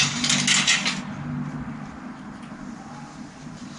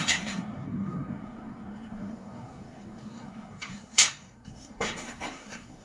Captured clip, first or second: first